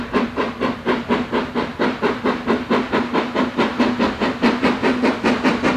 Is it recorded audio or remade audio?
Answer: recorded